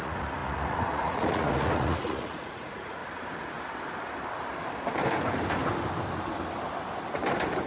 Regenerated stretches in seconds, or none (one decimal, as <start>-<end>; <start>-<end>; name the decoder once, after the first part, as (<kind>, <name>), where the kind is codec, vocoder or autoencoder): 0.0-3.0 (vocoder, Vocos)